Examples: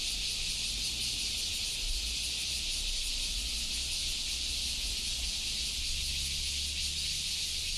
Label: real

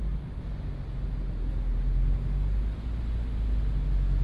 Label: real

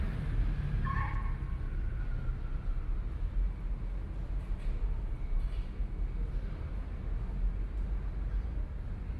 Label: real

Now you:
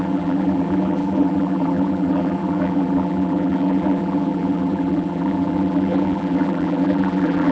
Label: fake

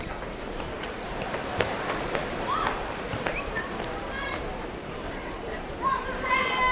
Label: fake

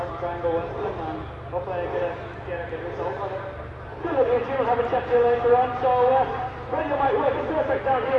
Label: real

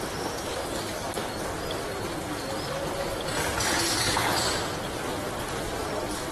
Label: real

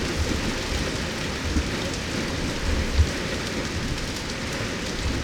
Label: real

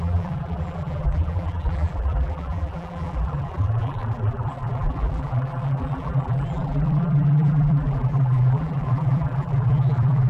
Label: fake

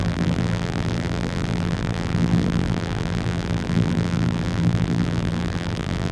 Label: fake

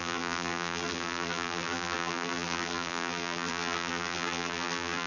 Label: fake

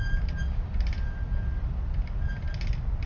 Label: real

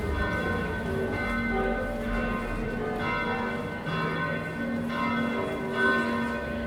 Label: real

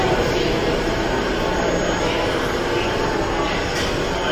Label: real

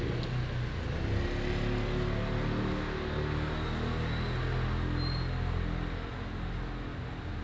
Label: real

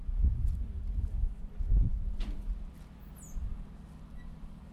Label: real